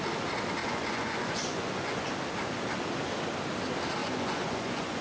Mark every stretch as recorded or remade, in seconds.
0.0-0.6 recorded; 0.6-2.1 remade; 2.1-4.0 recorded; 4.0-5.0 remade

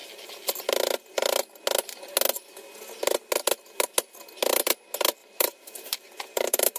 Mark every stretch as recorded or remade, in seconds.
0.0-5.2 recorded; 5.2-6.8 remade

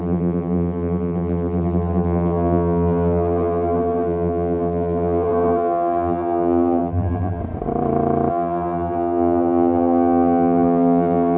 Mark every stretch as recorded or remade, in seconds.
0.0-7.4 remade; 7.4-8.3 recorded; 8.3-11.4 remade

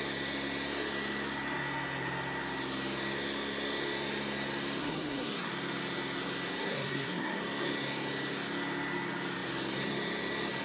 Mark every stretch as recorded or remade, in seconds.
0.0-4.8 recorded; 4.8-5.5 remade; 5.5-6.6 recorded; 6.6-7.4 remade; 7.4-10.6 recorded

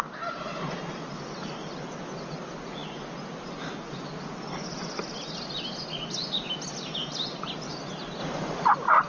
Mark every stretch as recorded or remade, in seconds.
0.0-8.2 recorded; 8.2-8.7 remade; 8.7-9.1 recorded

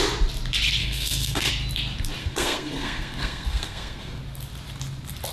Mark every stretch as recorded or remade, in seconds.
0.0-0.8 recorded; 0.8-1.5 remade; 1.5-2.2 recorded; 2.2-4.2 remade; 4.2-5.3 recorded